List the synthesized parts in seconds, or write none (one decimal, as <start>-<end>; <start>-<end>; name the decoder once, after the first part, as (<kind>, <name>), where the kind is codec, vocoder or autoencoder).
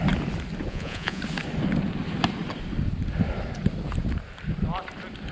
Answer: 0.7-1.2 (vocoder, Vocos)